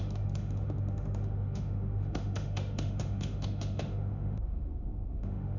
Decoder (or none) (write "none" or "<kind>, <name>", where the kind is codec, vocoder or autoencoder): autoencoder, DAC-VAE